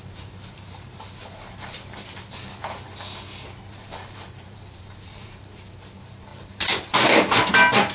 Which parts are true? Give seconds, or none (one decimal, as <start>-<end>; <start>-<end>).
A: 2.6-3.6